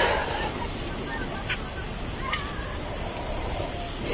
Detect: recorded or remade recorded